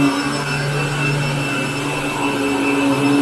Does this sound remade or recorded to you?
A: recorded